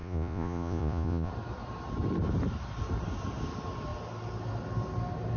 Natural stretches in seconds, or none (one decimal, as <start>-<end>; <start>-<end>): 1.3-5.4